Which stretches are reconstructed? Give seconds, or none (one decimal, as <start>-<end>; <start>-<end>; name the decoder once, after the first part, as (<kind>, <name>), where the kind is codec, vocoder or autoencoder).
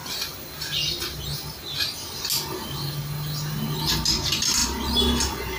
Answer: none